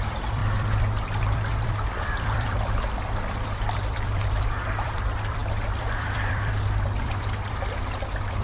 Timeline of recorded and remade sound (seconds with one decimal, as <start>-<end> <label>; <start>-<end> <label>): 0.0-8.4 remade